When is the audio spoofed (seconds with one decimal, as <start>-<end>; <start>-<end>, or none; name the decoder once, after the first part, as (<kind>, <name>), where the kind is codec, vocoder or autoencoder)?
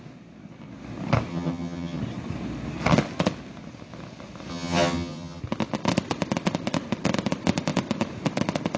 1.3-2.0 (vocoder, HiFi-GAN); 4.5-5.4